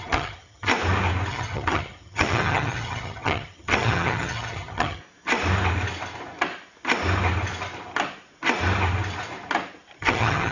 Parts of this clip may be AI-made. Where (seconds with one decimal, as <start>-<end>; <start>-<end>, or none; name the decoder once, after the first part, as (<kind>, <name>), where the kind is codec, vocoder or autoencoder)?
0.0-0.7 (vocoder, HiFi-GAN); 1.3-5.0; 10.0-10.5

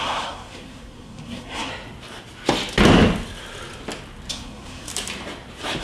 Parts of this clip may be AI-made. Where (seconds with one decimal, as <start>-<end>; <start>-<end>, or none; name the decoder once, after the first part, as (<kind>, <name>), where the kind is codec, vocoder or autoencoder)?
0.0-1.7 (codec, SNAC); 4.3-4.9

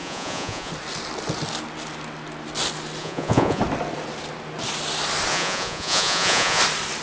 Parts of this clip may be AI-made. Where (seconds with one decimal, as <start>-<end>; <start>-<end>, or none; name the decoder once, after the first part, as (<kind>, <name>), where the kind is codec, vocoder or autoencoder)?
0.0-0.7 (vocoder, Vocos); 3.0-3.6; 5.3-6.6

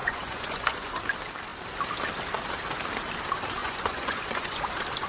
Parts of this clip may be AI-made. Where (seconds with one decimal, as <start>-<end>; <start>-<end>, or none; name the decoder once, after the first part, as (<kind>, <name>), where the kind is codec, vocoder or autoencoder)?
0.0-0.9 (vocoder, Vocos); 3.6-4.6

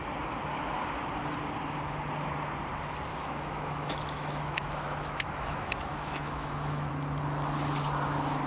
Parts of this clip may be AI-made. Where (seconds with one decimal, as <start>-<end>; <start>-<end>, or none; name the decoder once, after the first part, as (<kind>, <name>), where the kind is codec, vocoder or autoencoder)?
3.1-6.9 (autoencoder, DAC-VAE)

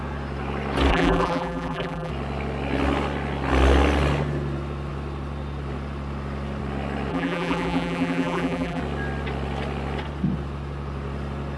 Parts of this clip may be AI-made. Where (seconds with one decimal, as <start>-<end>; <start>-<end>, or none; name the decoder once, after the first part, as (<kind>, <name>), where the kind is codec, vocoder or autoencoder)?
0.9-2.1 (vocoder, BigVGAN v2); 7.1-8.8